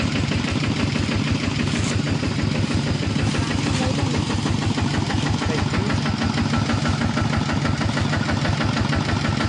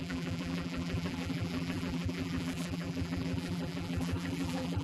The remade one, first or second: second